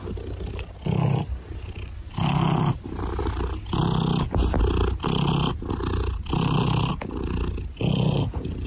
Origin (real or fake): real